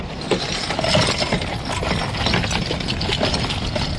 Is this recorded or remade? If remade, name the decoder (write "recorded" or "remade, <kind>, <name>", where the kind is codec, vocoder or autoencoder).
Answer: recorded